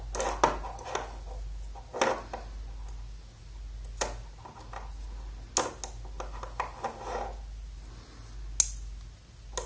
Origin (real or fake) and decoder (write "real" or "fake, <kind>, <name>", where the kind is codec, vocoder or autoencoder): real